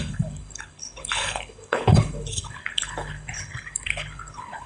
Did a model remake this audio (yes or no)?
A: yes